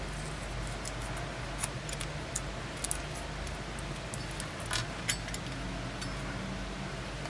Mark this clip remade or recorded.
recorded